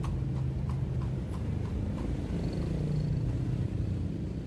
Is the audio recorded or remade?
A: recorded